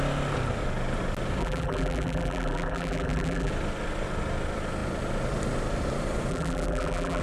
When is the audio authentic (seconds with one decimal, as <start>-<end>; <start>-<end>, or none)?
0.0-1.4; 3.5-6.3